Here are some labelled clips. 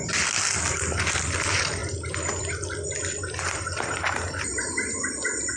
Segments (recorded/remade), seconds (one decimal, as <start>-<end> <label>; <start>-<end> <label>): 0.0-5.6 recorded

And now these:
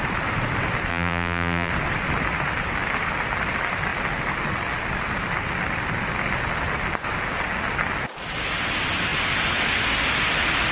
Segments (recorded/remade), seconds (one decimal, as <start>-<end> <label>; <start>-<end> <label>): 0.0-0.9 recorded; 0.9-1.7 remade; 1.7-10.7 recorded

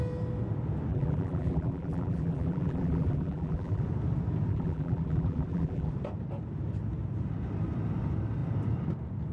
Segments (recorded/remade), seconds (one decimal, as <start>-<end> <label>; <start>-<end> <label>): 0.0-0.9 recorded; 0.9-3.8 remade; 3.8-4.5 recorded; 4.5-5.9 remade; 5.9-9.3 recorded

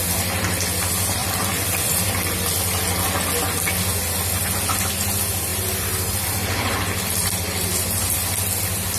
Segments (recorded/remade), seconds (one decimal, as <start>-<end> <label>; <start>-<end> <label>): 0.0-1.2 recorded; 1.2-2.0 remade; 2.0-5.5 recorded; 5.5-8.1 remade; 8.1-9.0 recorded

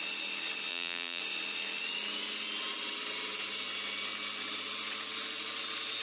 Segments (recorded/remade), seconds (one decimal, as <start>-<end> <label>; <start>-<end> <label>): 0.0-0.7 recorded; 0.7-1.2 remade; 1.2-6.0 recorded